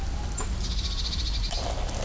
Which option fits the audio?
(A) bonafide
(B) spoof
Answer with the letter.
A